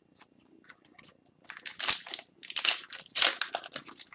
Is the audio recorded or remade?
recorded